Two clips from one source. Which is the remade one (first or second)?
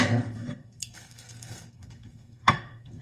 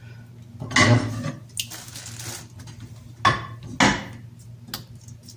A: first